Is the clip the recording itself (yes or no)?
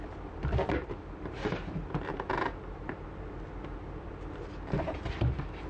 no